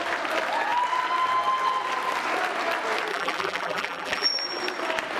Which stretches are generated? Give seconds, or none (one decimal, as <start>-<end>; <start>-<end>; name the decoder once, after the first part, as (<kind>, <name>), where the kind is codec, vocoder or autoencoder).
3.1-4.3 (vocoder, BigVGAN v2)